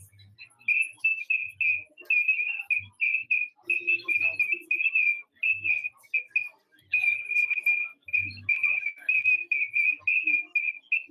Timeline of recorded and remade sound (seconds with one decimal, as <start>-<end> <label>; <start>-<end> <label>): 0.0-11.1 recorded